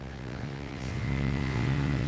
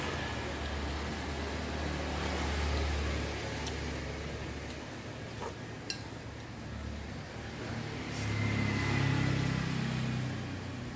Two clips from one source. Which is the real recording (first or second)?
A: second